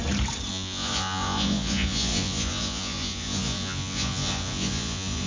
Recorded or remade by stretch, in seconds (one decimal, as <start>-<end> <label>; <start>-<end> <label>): 0.0-0.5 recorded; 0.5-5.3 remade